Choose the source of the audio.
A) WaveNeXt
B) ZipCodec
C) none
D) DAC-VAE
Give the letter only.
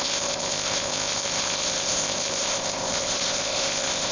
B